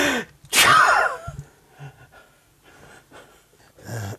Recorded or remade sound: recorded